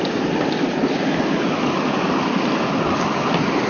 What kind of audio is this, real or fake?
real